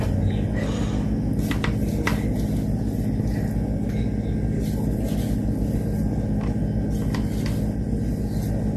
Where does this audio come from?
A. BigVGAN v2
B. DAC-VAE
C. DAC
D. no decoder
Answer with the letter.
D